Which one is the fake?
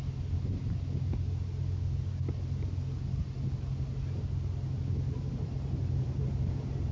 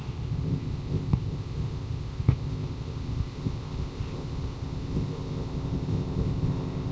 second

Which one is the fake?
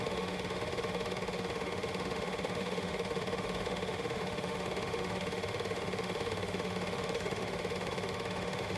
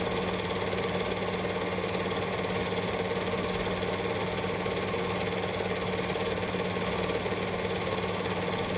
first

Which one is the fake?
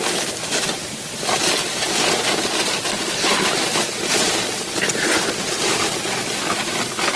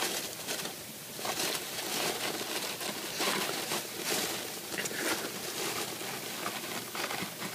first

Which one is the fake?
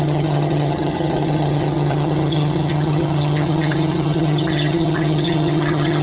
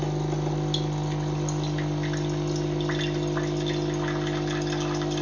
first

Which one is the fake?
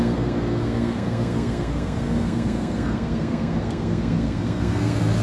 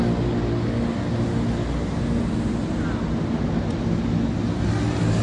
first